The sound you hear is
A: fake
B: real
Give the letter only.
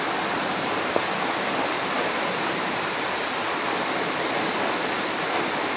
B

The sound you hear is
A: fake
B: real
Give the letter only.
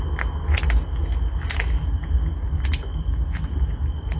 B